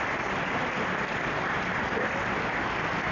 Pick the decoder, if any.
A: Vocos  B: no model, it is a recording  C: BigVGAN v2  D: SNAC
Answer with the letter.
B